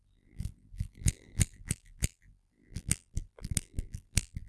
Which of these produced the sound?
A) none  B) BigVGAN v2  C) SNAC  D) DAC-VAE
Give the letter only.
B